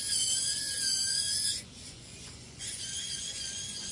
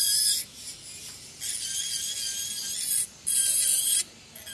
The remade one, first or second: first